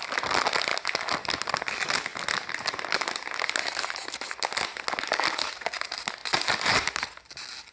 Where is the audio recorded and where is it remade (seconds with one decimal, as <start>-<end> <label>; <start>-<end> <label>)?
0.0-7.7 recorded